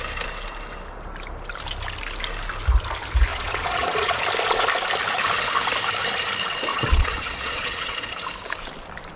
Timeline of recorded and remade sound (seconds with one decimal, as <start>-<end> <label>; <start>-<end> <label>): 0.0-3.3 recorded; 3.3-4.2 remade; 4.2-6.7 recorded; 6.7-8.2 remade; 8.2-9.2 recorded